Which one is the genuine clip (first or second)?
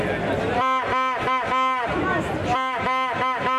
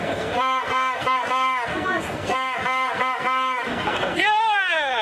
first